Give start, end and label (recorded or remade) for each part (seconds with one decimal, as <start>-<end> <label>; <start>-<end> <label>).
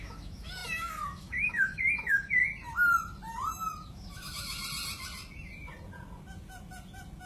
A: 0.0-2.4 remade; 2.4-3.9 recorded; 3.9-4.6 remade; 4.6-7.3 recorded